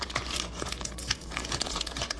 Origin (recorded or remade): remade